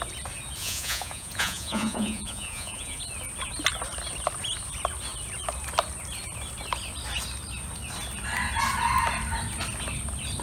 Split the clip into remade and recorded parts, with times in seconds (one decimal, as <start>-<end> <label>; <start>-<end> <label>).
0.0-0.6 recorded; 0.6-3.0 remade; 3.0-10.4 recorded